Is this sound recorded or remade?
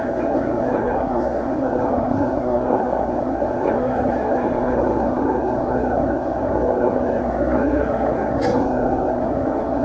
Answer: remade